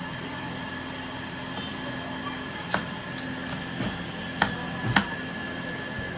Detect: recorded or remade recorded